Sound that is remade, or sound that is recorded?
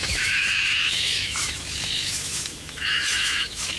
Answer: remade